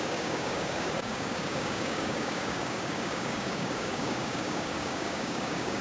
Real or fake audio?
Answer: fake